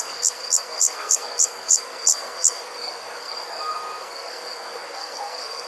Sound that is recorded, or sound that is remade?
remade